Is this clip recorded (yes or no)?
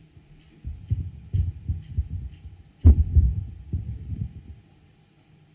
no